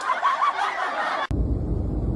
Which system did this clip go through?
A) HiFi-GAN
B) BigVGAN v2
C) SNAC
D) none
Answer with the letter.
D